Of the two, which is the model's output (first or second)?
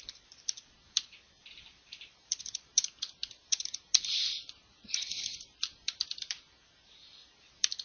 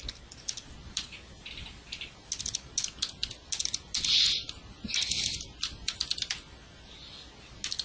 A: first